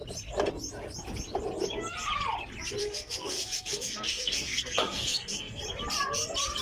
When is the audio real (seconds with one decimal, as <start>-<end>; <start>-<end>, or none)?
0.0-2.8; 5.6-6.6